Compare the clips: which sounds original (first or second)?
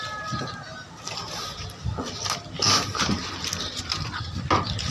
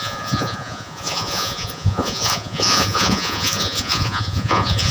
first